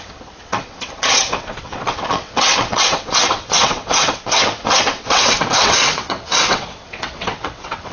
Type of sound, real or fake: fake